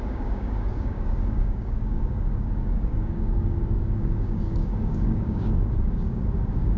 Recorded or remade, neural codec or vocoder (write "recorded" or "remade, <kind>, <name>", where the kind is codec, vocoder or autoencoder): remade, codec, DAC